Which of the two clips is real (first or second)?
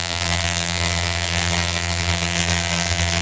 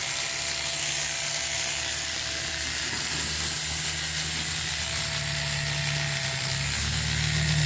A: second